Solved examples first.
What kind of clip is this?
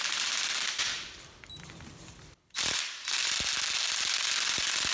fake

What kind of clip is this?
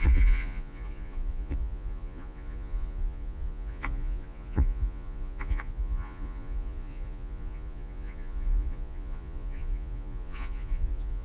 fake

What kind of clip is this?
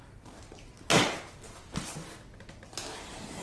real